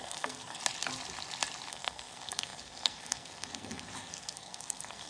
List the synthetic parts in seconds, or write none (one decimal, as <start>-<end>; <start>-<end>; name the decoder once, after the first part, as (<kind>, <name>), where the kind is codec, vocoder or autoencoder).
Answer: 0.0-0.6 (codec, SNAC); 1.7-5.1